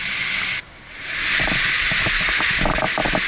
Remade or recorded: recorded